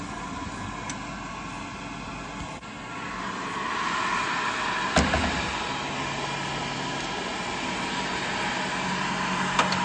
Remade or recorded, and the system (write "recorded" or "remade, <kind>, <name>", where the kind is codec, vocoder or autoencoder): recorded